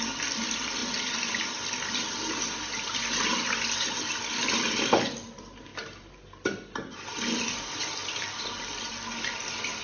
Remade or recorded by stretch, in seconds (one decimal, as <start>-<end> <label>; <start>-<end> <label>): 0.0-9.8 recorded